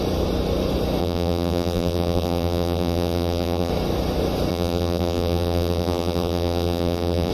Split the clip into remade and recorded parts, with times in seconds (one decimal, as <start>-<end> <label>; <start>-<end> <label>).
0.0-1.0 recorded; 1.0-3.7 remade; 3.7-4.5 recorded; 4.5-7.3 remade